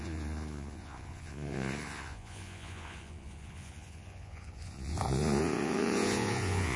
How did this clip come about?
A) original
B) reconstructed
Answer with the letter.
B